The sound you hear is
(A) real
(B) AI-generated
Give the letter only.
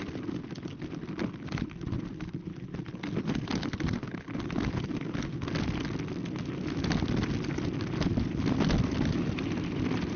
A